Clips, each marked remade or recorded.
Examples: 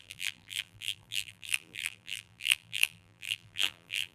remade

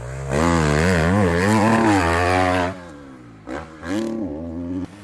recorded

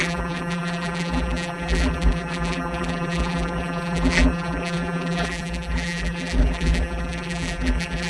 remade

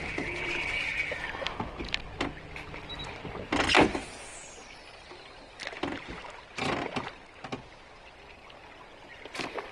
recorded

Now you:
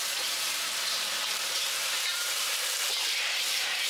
remade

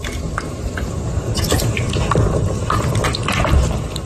remade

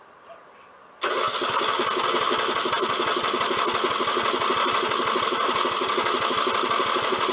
recorded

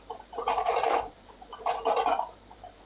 remade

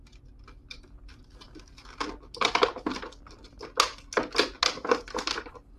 recorded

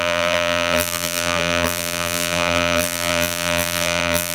remade